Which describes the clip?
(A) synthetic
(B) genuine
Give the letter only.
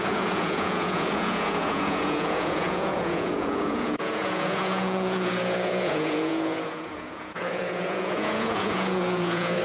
A